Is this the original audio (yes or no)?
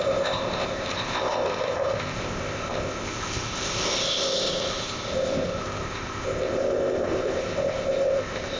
no